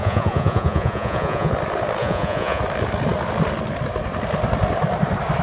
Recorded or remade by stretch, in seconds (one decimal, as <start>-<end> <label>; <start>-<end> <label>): 0.0-1.5 remade; 1.5-2.0 recorded; 2.0-2.6 remade; 2.6-5.4 recorded